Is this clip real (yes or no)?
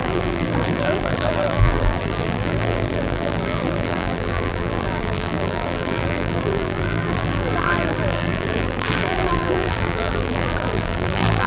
no